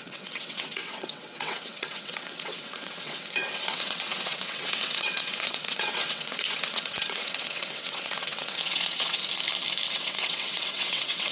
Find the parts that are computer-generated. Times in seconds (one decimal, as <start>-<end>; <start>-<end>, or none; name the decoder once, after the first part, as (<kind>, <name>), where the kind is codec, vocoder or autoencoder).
0.0-9.2 (vocoder, WaveNeXt); 9.9-11.3